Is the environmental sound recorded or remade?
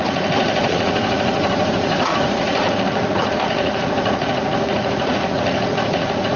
remade